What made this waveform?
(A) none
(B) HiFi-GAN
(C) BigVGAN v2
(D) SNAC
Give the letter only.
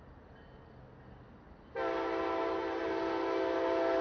A